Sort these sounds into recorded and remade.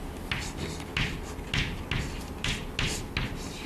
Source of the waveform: recorded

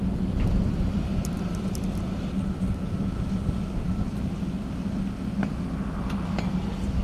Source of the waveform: recorded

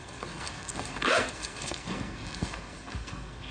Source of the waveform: remade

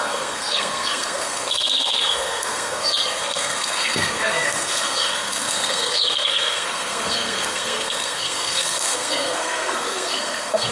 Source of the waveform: remade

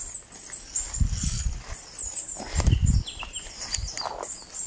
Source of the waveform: recorded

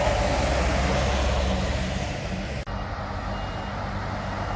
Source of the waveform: recorded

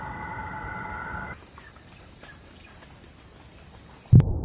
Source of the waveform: recorded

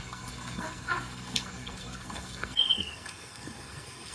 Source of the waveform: remade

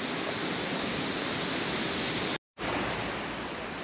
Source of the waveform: recorded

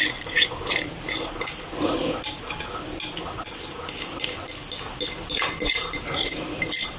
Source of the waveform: recorded